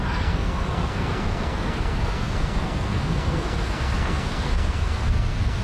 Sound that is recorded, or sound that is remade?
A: remade